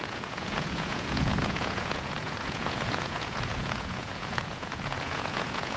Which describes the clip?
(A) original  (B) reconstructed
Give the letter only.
B